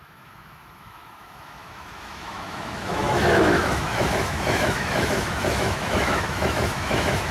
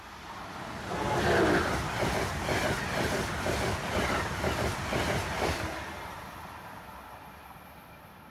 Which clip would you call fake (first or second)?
first